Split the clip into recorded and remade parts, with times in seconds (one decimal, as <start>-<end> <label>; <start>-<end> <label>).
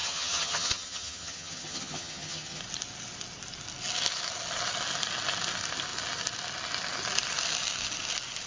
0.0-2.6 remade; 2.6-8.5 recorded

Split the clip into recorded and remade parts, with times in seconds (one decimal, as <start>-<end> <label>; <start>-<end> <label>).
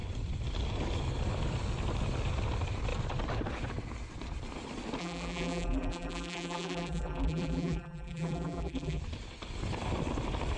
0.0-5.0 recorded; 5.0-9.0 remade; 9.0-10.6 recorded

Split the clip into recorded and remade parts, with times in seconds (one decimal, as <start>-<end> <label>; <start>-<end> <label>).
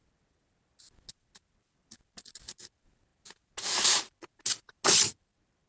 0.0-5.7 recorded